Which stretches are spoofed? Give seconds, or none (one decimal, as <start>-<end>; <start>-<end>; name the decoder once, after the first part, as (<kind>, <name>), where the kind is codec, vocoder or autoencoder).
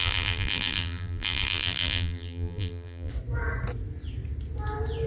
0.0-3.1 (vocoder, BigVGAN v2)